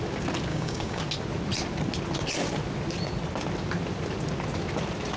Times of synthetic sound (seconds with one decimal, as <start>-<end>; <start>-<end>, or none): 0.5-1.0